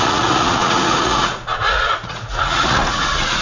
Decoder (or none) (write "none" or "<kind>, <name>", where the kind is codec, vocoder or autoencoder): vocoder, Vocos